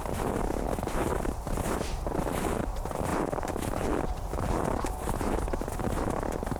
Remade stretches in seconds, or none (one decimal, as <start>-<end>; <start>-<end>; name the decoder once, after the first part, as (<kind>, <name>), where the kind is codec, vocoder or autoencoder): none